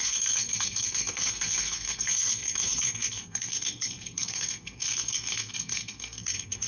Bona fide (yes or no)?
no